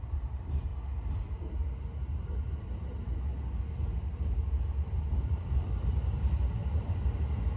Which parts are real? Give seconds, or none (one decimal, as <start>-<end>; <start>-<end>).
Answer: 0.7-5.0; 6.6-7.6